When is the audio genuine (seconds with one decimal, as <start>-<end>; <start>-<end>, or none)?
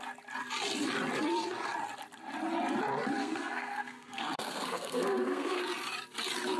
0.0-3.2; 5.6-6.6